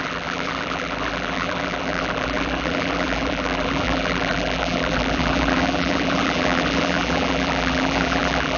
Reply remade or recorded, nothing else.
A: remade